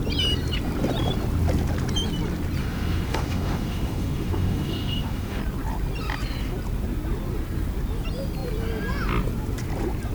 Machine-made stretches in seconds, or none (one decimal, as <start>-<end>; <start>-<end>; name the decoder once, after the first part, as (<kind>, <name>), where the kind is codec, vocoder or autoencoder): 2.6-5.4 (autoencoder, DAC-VAE)